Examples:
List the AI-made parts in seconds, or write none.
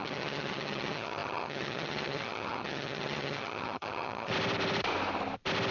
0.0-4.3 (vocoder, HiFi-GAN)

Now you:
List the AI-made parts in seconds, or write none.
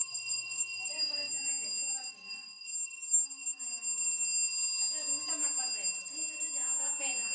0.0-1.3 (codec, DAC); 2.1-3.6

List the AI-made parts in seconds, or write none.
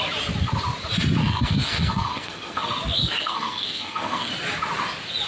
1.2-2.6 (codec, SNAC); 3.0-4.3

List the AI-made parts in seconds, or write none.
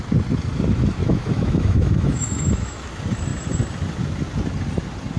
1.0-2.9 (autoencoder, DAC-VAE)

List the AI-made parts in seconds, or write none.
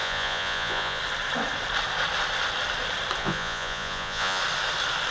0.0-1.0 (vocoder, Vocos); 3.2-4.4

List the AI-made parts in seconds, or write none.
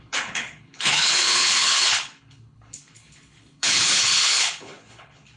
0.0-5.4 (codec, HILCodec)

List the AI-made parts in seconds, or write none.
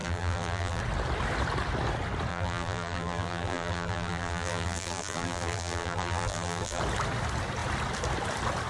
0.0-0.8 (vocoder, BigVGAN v2); 2.3-6.8